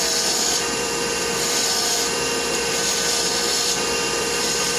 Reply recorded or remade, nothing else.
remade